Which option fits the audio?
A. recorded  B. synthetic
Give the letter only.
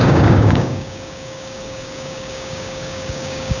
B